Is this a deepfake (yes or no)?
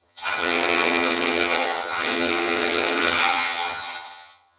yes